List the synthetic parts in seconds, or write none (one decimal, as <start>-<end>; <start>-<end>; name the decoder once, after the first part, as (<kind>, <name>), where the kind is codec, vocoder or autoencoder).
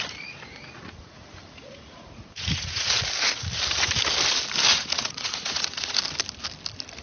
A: 0.5-3.0 (vocoder, Vocos); 4.7-6.0